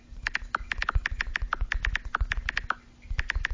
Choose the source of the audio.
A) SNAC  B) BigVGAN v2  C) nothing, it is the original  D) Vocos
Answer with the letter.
C